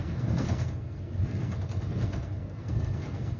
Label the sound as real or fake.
fake